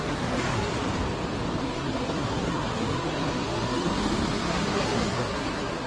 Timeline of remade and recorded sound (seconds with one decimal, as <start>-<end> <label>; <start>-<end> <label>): 0.0-0.7 remade; 0.7-1.6 recorded; 1.6-5.9 remade

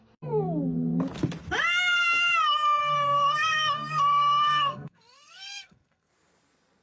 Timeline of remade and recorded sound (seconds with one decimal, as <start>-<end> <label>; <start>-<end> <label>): 0.0-2.8 recorded; 2.8-6.1 remade; 6.1-6.8 recorded

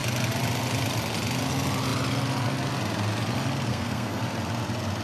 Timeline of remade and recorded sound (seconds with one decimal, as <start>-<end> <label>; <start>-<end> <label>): 0.0-3.7 recorded; 3.7-4.2 remade; 4.2-5.0 recorded

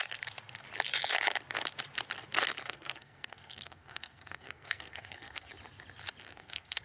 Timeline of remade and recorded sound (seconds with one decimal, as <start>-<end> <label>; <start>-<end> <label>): 0.0-2.6 recorded; 2.6-5.5 remade; 5.5-6.2 recorded; 6.2-6.8 remade

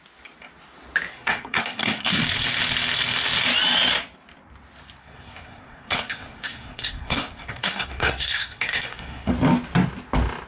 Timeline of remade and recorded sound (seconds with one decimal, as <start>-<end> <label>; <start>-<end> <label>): 0.0-1.1 recorded; 1.1-2.2 remade; 2.2-5.0 recorded; 5.0-9.3 remade; 9.3-10.5 recorded

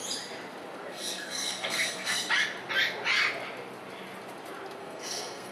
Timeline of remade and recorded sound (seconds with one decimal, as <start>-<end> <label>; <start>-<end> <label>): 0.0-0.9 recorded; 0.9-2.3 remade; 2.3-4.8 recorded; 4.8-5.5 remade

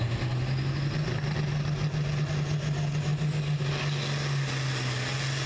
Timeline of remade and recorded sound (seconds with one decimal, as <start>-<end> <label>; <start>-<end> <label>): 0.0-5.5 recorded